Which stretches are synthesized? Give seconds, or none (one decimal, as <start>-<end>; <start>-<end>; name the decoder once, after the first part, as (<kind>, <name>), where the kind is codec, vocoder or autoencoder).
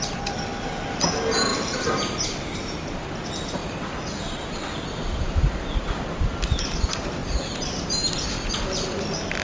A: 1.5-3.0 (vocoder, BigVGAN v2); 7.2-8.1